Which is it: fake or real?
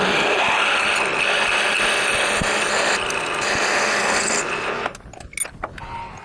real